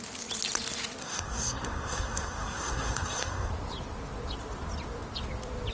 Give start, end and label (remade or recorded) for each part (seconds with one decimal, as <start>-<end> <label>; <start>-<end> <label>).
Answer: 0.0-1.0 recorded; 1.0-3.5 remade; 3.5-5.7 recorded